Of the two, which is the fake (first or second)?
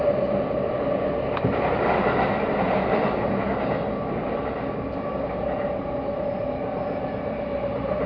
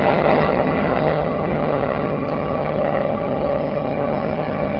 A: second